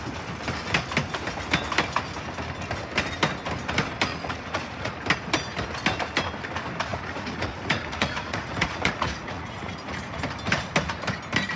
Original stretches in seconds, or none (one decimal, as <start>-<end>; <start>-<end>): 0.0-4.1; 5.0-6.9; 10.2-11.6